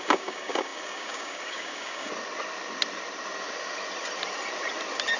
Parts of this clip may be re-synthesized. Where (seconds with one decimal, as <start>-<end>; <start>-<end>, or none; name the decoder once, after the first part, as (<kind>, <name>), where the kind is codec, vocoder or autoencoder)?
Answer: 0.0-2.1 (codec, DAC)